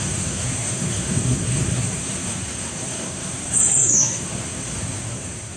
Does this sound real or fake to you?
fake